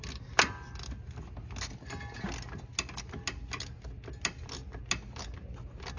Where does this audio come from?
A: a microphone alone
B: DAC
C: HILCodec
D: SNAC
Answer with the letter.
A